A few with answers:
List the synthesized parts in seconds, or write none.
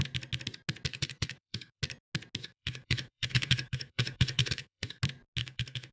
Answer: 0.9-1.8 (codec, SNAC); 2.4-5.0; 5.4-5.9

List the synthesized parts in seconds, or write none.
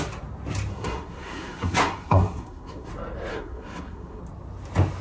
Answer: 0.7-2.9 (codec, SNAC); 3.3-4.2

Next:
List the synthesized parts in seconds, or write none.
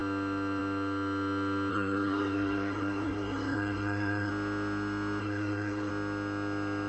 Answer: 1.7-4.3 (codec, SNAC); 5.2-5.9